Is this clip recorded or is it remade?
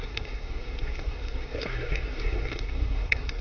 remade